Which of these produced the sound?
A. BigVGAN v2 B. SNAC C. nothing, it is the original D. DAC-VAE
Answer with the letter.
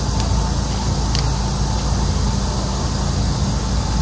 C